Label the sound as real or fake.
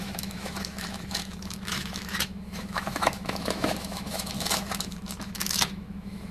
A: fake